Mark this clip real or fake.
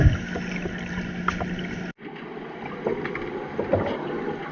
real